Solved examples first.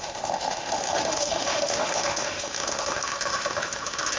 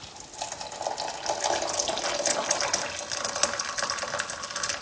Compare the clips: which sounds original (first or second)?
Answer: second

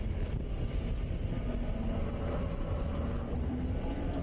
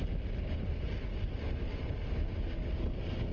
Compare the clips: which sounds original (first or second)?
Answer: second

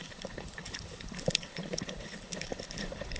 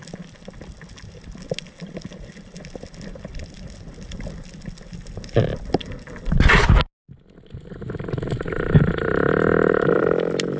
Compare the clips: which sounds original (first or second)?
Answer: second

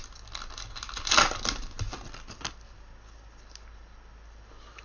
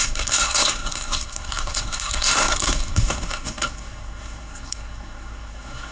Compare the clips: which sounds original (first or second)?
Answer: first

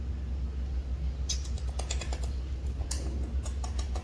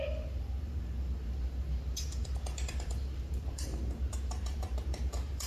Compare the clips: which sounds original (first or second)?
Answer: first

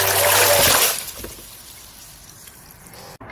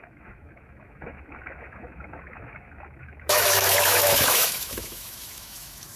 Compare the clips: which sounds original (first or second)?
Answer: first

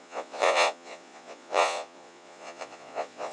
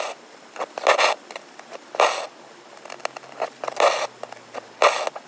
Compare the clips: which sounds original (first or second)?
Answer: second